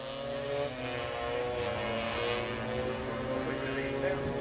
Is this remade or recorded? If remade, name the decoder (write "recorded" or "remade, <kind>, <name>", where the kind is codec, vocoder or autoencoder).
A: recorded